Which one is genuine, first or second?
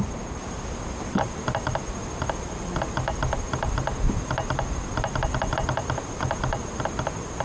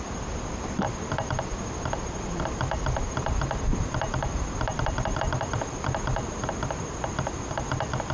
first